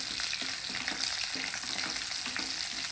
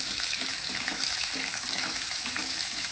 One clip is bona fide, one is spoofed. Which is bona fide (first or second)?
first